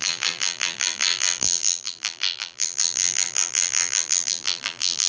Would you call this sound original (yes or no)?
no